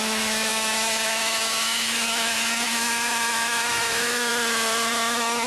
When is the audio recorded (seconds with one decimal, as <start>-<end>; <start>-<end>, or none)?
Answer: 4.3-4.9